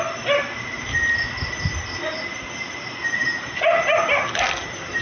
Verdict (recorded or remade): recorded